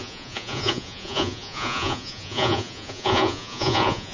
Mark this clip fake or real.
fake